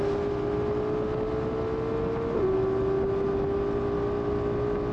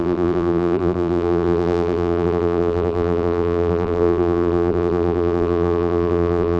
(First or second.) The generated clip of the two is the second